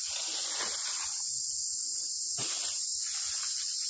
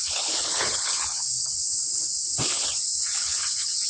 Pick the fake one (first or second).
second